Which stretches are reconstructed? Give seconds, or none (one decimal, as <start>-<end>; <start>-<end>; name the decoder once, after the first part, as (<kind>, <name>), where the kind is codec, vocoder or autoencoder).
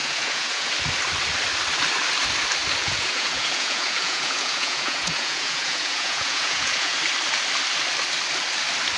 0.0-0.7 (vocoder, Vocos); 2.8-7.0